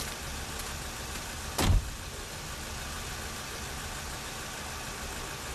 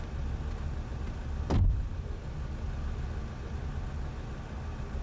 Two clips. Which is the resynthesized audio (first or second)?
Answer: first